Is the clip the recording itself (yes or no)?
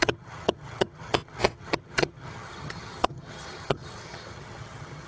no